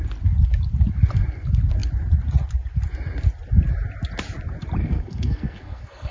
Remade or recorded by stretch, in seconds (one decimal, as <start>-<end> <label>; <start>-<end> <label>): 0.0-4.8 recorded; 4.8-6.1 remade